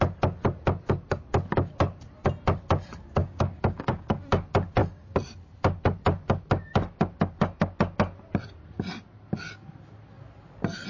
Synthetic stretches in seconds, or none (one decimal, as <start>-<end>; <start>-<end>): 3.2-4.2